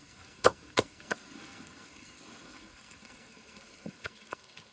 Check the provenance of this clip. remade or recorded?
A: remade